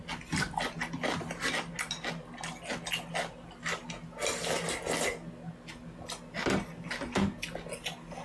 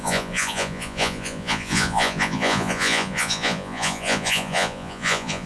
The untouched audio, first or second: first